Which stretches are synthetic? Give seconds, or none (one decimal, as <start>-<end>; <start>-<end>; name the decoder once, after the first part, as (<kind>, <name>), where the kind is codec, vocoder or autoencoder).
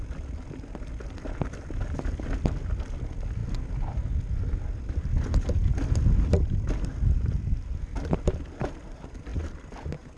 none